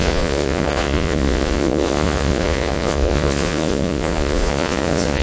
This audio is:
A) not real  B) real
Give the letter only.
A